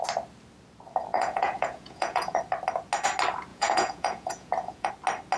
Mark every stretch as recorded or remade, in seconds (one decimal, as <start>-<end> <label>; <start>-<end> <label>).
0.0-1.1 recorded; 1.1-2.4 remade; 2.4-3.5 recorded; 3.5-4.9 remade; 4.9-5.4 recorded